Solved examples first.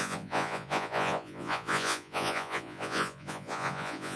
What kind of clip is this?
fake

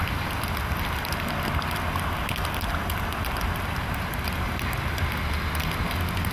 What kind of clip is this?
real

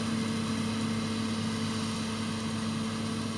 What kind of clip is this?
real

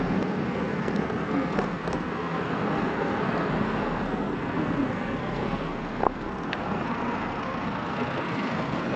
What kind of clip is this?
fake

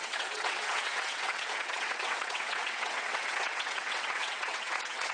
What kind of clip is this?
fake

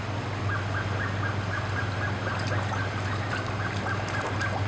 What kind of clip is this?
real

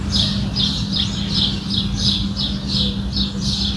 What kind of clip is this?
real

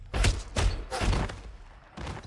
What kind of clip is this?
real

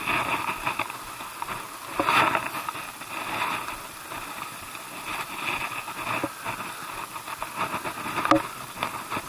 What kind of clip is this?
real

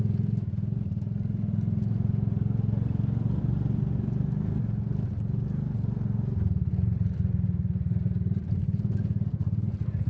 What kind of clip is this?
real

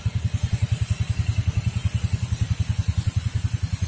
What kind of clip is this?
real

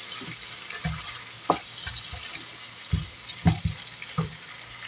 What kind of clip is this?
real